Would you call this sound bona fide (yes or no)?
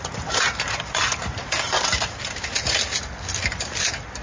yes